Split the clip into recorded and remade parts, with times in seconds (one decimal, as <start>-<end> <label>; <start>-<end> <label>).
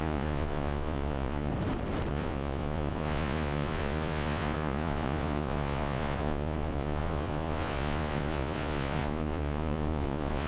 0.0-1.5 remade; 1.5-2.1 recorded; 2.1-10.5 remade